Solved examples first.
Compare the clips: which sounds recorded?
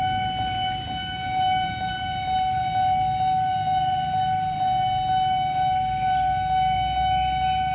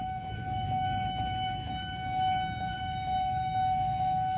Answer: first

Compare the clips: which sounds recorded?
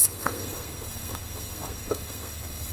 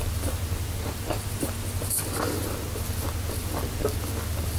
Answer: second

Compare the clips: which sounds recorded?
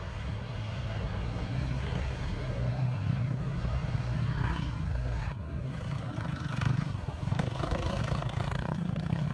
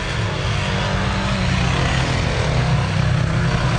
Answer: second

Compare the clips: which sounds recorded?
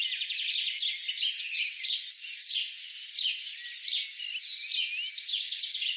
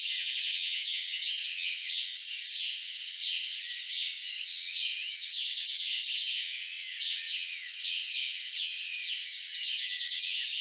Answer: first